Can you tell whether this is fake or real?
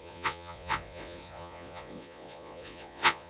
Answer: fake